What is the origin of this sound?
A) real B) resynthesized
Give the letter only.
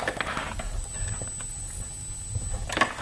A